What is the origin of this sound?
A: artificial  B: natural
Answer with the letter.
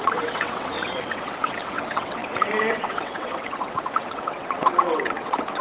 A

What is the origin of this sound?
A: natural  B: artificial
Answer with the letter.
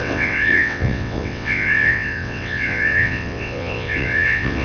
B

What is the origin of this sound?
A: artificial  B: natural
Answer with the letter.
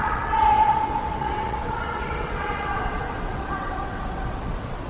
A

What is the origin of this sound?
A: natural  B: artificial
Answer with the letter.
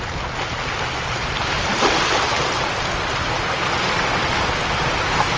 A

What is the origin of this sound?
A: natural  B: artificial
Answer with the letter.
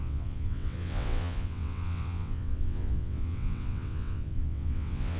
B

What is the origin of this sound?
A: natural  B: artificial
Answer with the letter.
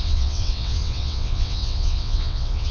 B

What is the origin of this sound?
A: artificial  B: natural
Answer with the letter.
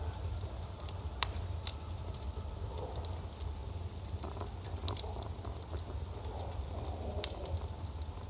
B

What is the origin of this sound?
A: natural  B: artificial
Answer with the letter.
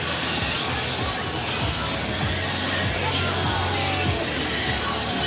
A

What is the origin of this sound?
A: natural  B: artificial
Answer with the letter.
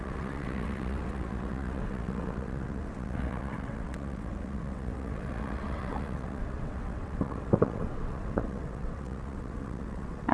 B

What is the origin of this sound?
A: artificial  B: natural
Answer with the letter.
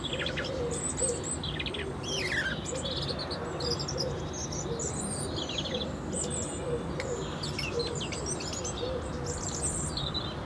B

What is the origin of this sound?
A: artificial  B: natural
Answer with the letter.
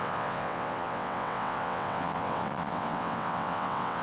A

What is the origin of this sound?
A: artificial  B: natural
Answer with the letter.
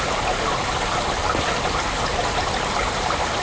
B